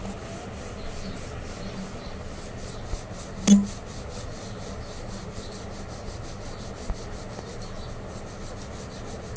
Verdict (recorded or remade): recorded